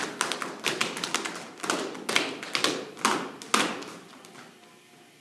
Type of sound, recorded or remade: recorded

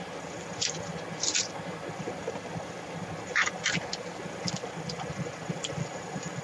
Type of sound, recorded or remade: recorded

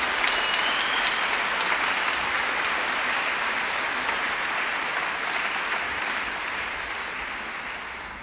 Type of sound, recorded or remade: recorded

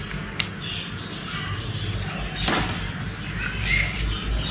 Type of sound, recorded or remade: recorded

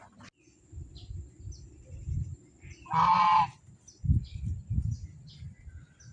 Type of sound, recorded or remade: recorded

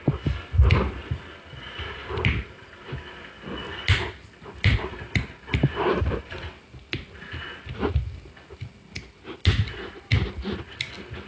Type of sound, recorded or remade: recorded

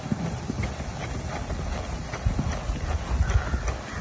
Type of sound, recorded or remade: recorded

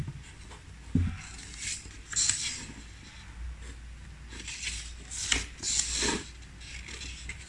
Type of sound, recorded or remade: recorded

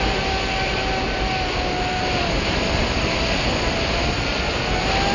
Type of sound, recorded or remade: recorded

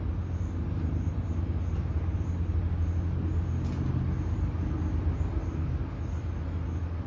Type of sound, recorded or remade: recorded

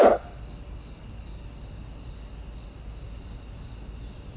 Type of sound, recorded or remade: recorded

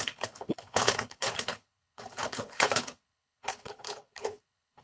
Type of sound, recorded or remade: remade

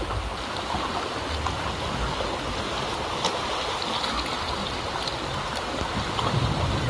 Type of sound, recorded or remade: recorded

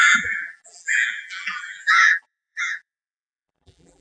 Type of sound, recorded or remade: remade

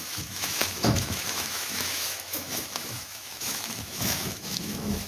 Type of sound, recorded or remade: remade